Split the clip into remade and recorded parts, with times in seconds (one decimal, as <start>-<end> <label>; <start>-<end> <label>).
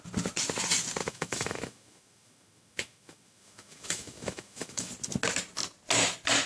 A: 0.0-1.0 recorded; 1.0-4.9 remade; 4.9-6.5 recorded